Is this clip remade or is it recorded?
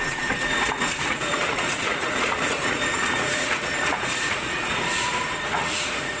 remade